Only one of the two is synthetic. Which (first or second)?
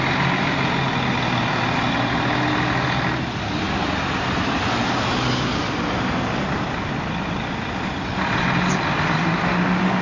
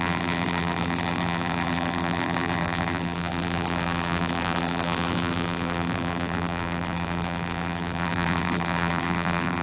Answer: second